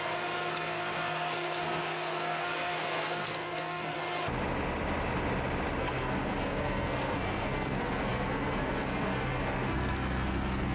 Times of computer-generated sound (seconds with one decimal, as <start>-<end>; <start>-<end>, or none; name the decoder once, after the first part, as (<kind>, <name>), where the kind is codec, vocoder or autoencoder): 0.0-4.0 (codec, SNAC); 5.8-10.7